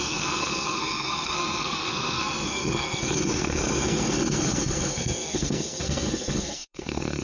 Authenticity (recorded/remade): remade